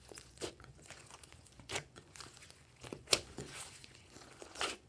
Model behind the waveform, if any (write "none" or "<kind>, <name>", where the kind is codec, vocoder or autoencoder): vocoder, Vocos